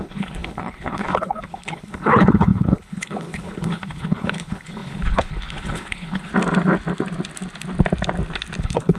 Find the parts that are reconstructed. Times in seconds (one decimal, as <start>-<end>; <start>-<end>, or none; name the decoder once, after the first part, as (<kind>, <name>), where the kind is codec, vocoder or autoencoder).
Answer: 0.0-6.3 (codec, HILCodec); 8.6-9.0